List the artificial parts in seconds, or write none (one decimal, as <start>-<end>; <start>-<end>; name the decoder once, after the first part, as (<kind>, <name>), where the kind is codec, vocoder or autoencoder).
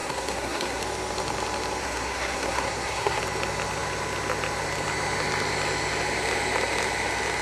0.0-0.8 (codec, SNAC); 1.8-3.2